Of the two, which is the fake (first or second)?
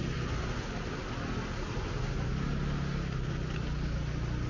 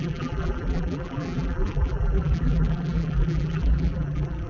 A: second